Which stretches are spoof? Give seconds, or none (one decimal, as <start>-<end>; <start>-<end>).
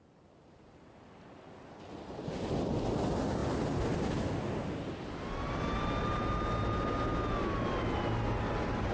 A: none